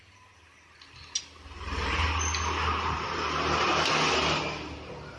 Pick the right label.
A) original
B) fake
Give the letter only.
A